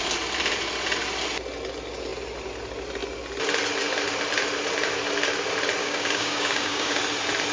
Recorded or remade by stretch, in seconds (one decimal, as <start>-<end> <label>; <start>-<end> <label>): 0.0-5.8 recorded; 5.8-7.0 remade; 7.0-7.5 recorded